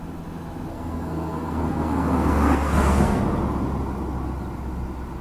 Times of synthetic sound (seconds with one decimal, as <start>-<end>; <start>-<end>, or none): 0.7-3.2